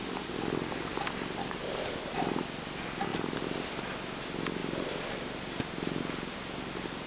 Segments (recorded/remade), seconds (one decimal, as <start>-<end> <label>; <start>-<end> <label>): 0.0-0.9 remade; 0.9-1.4 recorded; 1.4-2.1 remade; 2.1-7.1 recorded